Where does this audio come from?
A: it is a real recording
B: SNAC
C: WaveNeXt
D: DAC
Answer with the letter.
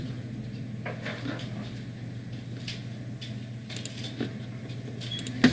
A